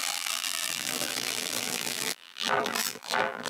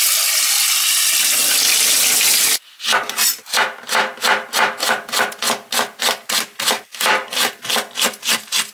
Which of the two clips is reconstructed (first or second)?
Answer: first